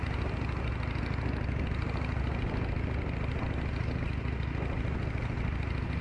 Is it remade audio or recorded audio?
recorded